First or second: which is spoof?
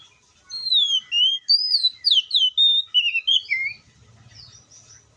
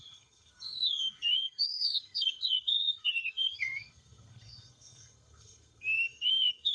second